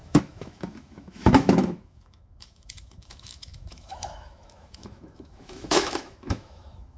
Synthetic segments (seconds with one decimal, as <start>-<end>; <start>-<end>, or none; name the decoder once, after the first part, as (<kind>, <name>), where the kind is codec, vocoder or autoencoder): 0.0-7.0 (autoencoder, DAC-VAE)